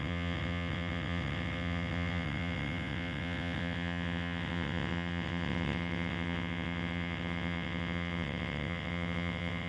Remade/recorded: remade